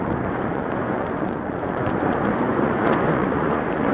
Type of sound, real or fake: fake